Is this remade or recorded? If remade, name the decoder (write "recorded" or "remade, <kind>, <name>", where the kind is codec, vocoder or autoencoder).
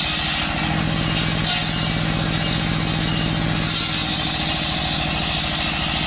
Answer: recorded